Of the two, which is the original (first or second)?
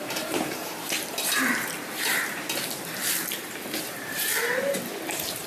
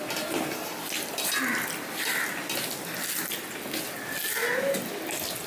second